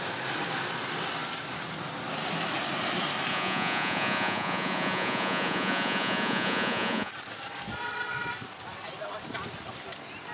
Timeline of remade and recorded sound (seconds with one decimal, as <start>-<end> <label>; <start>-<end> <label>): 0.0-3.3 recorded; 3.3-7.1 remade; 7.1-10.3 recorded